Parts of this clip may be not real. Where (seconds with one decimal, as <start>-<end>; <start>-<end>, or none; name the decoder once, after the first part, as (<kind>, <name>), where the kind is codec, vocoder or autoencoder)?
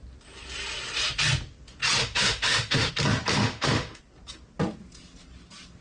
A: 2.0-2.9 (autoencoder, DAC-VAE); 3.3-4.0